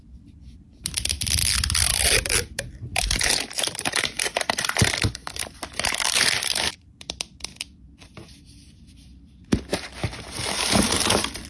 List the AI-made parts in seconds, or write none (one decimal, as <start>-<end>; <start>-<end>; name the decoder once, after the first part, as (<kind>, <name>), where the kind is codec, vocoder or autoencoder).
0.0-7.5 (vocoder, BigVGAN v2); 11.0-11.5